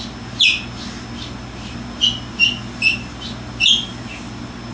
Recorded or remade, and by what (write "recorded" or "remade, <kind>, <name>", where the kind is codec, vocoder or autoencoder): recorded